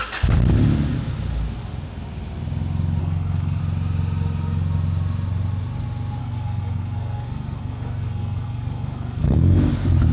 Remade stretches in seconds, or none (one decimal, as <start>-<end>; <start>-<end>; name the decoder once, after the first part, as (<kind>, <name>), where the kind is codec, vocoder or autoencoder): 3.0-3.6 (codec, SNAC); 6.2-9.7